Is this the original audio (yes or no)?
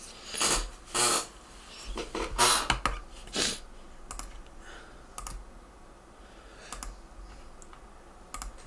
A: yes